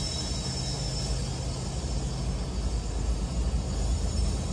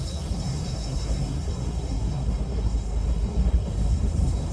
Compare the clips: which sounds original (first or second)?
first